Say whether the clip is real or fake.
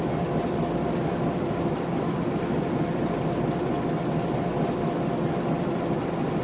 real